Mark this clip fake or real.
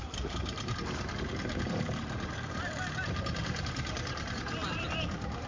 fake